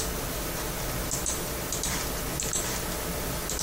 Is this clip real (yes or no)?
yes